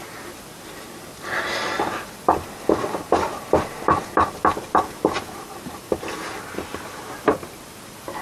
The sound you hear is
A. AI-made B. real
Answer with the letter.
B